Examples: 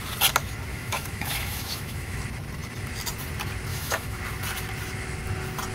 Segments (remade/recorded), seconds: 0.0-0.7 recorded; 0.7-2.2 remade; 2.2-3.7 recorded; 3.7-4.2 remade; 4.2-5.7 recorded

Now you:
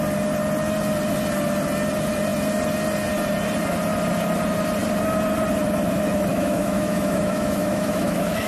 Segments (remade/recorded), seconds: 0.0-6.3 recorded; 6.3-8.5 remade

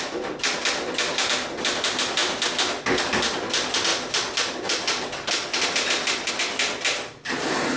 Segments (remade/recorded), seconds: 0.0-7.8 recorded

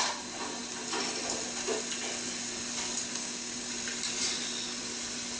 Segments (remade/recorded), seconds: 0.0-3.2 recorded; 3.2-3.7 remade; 3.7-5.4 recorded

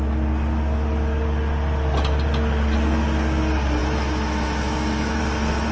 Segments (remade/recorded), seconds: 0.0-3.8 recorded; 3.8-5.2 remade; 5.2-5.7 recorded

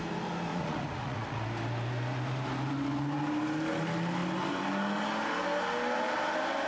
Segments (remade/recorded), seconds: 0.0-0.5 recorded; 0.5-1.4 remade; 1.4-6.7 recorded

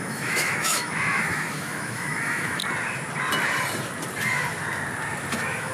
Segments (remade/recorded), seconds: 0.0-2.6 remade; 2.6-5.3 recorded; 5.3-5.7 remade